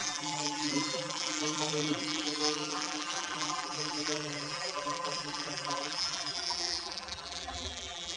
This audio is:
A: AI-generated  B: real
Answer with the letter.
A